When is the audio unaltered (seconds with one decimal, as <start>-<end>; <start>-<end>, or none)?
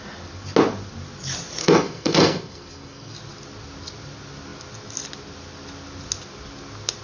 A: 0.0-1.6; 3.1-7.0